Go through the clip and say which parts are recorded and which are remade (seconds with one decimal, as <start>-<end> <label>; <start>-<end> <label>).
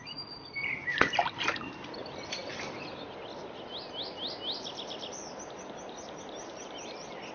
0.0-7.3 recorded